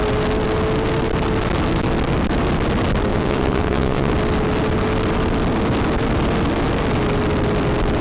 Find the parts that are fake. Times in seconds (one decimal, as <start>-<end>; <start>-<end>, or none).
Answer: 3.1-4.1